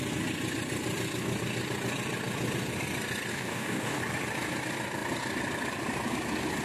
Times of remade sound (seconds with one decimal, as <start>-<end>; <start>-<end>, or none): 3.3-4.0

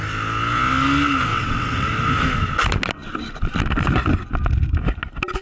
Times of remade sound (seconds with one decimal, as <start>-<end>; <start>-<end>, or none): 1.3-1.9

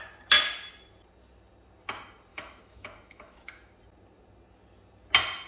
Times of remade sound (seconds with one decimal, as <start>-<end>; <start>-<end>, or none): 2.3-3.7